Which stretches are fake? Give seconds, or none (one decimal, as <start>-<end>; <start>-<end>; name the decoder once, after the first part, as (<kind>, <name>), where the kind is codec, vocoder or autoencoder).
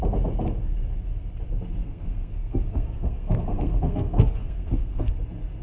1.8-5.1 (codec, SNAC)